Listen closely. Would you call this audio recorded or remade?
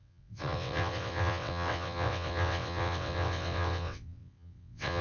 remade